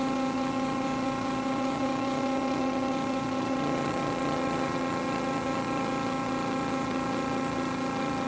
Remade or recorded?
remade